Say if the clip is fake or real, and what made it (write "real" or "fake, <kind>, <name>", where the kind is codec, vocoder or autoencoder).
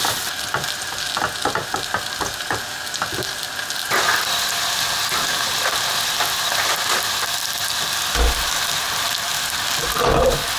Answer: real